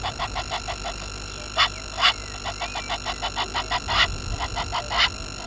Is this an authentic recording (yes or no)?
yes